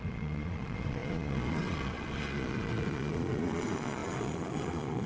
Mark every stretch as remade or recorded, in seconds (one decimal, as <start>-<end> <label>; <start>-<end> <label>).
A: 0.0-5.1 remade